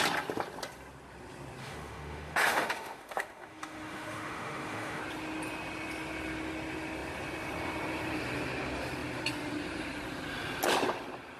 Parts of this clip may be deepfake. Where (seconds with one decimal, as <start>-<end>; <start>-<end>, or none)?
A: 1.6-5.0